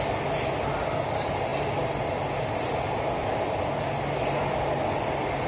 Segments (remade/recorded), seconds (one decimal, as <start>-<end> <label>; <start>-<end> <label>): 0.0-5.5 recorded

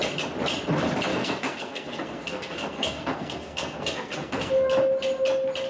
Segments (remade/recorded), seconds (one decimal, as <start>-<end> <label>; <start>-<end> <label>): 0.0-1.1 recorded; 1.1-4.5 remade; 4.5-5.7 recorded